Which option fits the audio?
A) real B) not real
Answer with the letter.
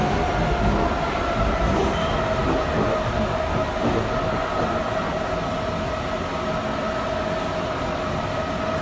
A